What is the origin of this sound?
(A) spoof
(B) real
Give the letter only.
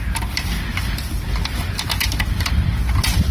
B